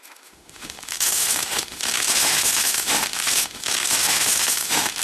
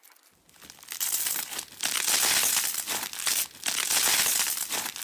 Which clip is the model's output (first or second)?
first